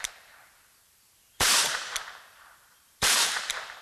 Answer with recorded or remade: remade